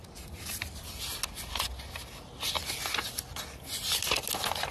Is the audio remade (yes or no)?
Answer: no